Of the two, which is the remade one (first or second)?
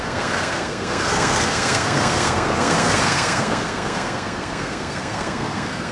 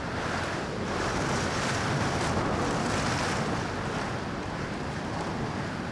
first